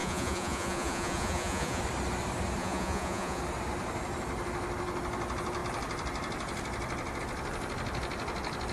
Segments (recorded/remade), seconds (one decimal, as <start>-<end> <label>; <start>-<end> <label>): 0.0-1.8 remade; 1.8-2.6 recorded; 2.6-3.4 remade; 3.4-8.7 recorded